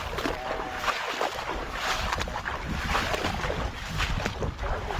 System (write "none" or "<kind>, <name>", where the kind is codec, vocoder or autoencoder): none